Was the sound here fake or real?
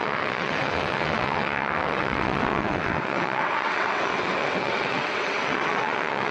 fake